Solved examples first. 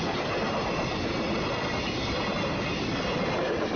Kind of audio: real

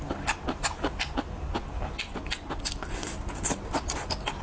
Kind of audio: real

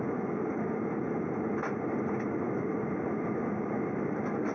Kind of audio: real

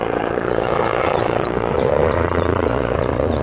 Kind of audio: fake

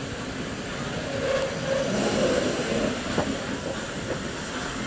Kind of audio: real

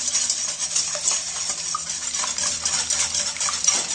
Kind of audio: real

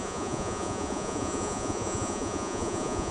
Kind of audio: fake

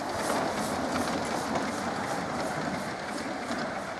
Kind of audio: real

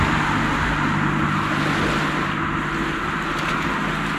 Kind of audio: real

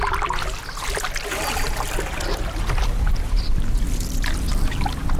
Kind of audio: real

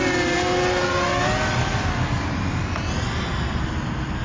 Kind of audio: real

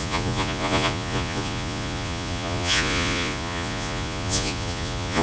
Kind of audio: fake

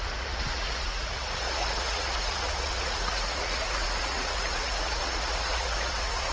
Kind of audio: fake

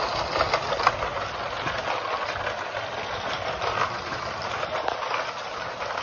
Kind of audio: real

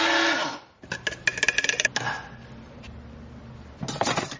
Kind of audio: real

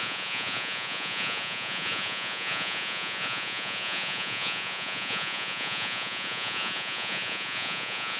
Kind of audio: fake